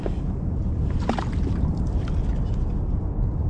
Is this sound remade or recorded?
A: recorded